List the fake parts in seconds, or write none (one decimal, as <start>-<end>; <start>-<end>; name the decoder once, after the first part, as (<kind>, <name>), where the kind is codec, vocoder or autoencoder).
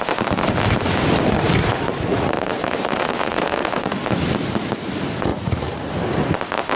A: 2.1-4.0 (vocoder, Vocos); 5.3-5.9